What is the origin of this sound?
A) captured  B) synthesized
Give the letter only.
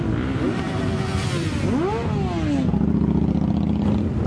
A